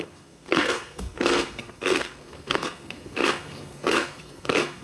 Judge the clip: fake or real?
fake